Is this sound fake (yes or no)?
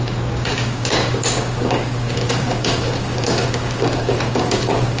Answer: yes